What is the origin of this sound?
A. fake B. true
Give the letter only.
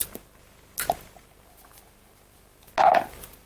B